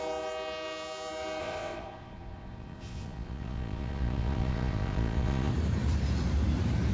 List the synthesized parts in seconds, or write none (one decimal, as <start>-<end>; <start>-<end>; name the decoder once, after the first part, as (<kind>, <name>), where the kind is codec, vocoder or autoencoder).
1.4-5.5 (vocoder, Vocos)